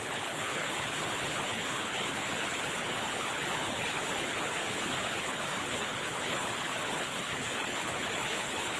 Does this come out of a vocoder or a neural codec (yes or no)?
yes